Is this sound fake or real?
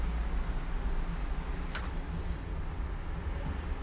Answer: real